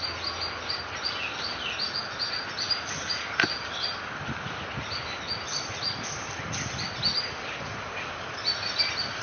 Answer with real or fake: real